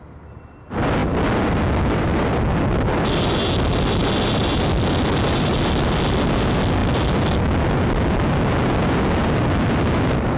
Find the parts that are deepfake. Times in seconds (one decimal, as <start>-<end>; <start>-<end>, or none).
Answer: none